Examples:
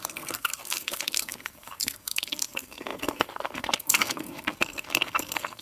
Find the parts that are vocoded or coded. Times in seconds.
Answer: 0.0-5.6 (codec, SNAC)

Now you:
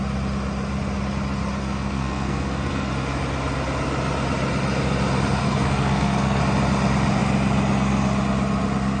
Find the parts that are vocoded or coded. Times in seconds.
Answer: 1.6-2.9 (codec, SNAC); 5.4-6.4

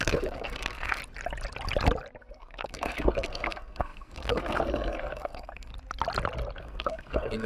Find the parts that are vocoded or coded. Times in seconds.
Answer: 0.0-1.0 (codec, SNAC); 2.2-5.7; 6.6-7.5

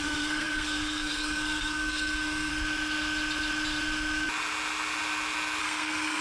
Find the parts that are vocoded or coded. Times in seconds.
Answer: 0.0-2.5 (codec, SNAC); 5.6-6.2

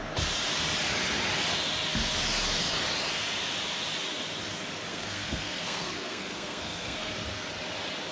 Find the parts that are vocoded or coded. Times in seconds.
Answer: 4.9-7.1 (codec, SNAC)

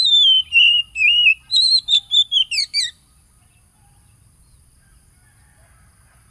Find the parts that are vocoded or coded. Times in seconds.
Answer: none

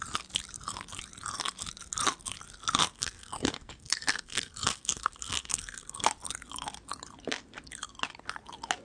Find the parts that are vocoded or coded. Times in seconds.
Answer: 2.8-6.1 (codec, SNAC)

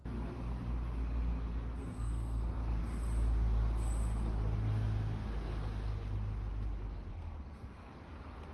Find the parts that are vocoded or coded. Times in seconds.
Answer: 1.8-2.8 (codec, SNAC); 7.1-7.9